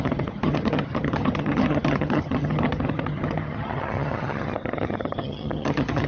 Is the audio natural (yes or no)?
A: no